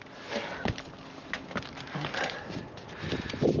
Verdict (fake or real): real